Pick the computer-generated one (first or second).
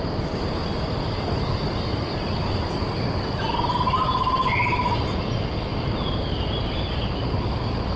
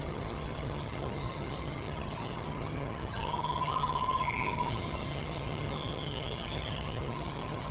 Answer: second